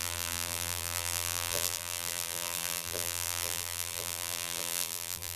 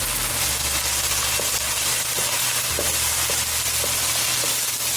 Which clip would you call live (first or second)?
second